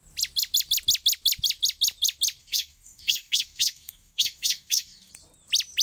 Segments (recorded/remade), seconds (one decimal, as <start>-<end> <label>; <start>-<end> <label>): 0.0-2.4 recorded; 2.4-5.1 remade; 5.1-5.8 recorded